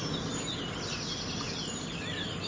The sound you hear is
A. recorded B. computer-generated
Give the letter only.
A